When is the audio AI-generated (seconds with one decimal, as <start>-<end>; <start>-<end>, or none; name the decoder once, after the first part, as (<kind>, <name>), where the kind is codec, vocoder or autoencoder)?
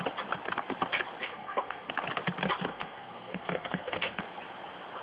1.3-1.9 (codec, SNAC); 2.7-4.2